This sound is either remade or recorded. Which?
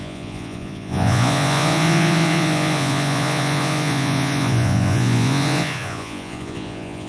remade